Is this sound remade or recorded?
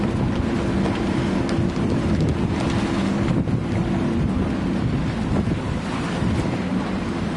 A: recorded